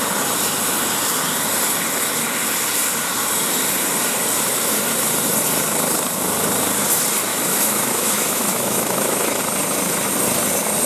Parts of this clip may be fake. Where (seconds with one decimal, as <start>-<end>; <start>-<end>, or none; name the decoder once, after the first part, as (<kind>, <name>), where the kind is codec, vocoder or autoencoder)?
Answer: 7.3-9.4 (autoencoder, DAC-VAE)